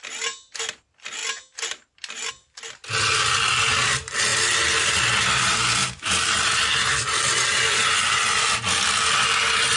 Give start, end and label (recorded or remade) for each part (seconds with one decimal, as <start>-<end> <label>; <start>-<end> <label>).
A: 0.0-9.8 recorded